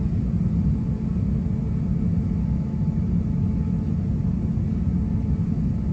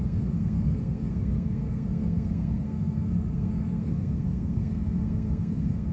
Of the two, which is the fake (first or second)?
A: second